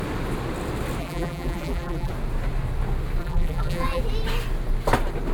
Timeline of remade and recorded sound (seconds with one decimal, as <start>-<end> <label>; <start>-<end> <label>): 0.0-1.0 recorded; 1.0-2.1 remade; 2.1-3.2 recorded; 3.2-4.0 remade; 4.0-5.3 recorded